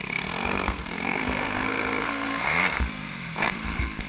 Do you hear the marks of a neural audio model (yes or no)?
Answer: yes